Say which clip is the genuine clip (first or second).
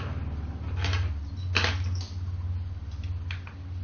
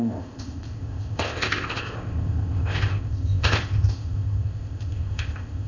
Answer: first